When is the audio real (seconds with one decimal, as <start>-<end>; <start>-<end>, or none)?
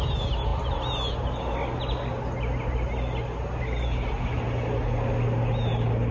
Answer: 0.0-6.1